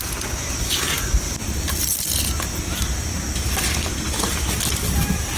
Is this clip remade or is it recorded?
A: recorded